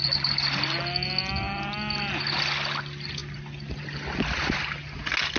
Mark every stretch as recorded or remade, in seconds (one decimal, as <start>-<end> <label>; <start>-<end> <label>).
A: 0.0-5.4 recorded